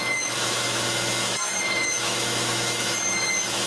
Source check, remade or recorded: remade